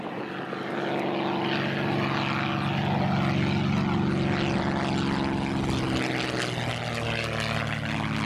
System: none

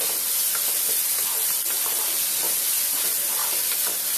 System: none